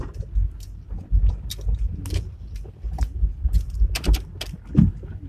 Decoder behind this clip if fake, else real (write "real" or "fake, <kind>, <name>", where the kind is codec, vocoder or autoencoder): real